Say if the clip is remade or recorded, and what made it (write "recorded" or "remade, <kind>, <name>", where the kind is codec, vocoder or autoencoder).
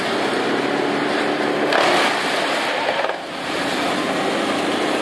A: recorded